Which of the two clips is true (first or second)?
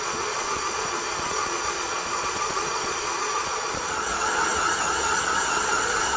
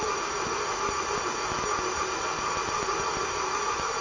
second